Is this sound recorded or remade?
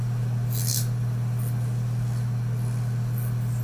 recorded